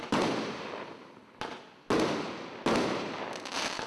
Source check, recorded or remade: recorded